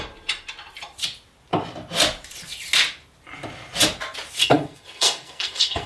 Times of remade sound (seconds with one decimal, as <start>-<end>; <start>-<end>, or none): 4.4-5.9